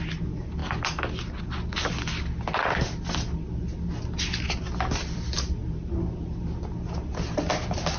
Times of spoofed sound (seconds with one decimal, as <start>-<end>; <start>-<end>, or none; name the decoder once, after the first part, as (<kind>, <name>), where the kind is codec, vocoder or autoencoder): none